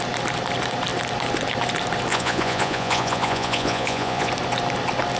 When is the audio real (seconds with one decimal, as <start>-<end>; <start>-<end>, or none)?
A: 0.0-2.1; 4.3-5.2